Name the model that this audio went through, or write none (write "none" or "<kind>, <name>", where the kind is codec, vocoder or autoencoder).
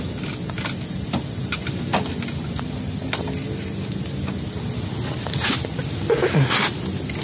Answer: none